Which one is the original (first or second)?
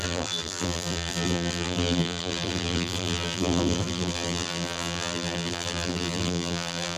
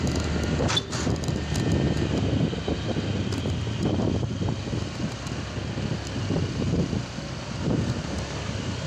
second